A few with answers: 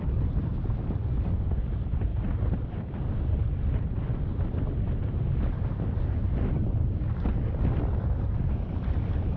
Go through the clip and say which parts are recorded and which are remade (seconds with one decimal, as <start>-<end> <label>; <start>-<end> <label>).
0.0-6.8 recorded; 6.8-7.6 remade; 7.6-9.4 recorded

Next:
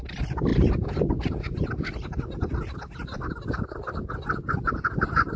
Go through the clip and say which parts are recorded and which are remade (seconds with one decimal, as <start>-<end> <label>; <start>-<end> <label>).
0.0-5.4 recorded

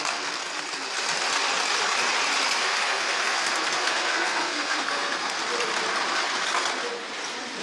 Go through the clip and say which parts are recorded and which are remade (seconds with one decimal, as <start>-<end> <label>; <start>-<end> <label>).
0.0-0.4 remade; 0.4-2.6 recorded; 2.6-5.4 remade; 5.4-7.6 recorded